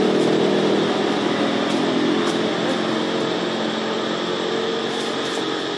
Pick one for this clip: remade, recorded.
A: recorded